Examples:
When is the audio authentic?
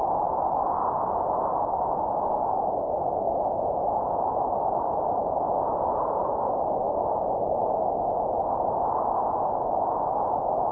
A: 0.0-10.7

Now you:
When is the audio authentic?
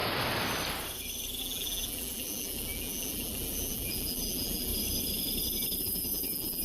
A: 0.0-1.4; 4.7-5.8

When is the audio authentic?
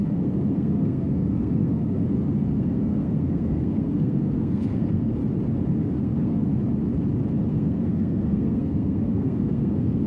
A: 5.2-6.0; 6.5-7.5